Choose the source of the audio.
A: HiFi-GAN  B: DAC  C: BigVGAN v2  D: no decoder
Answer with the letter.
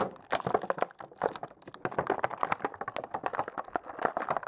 D